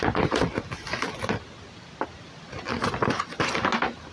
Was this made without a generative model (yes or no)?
yes